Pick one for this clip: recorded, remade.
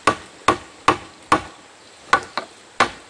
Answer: recorded